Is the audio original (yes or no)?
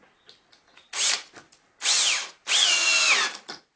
yes